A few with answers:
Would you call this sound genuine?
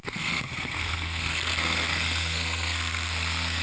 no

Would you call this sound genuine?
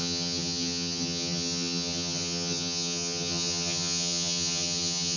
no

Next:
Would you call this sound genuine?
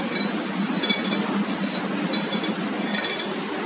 yes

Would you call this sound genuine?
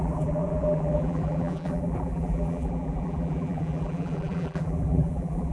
no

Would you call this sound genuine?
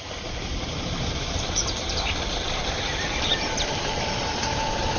no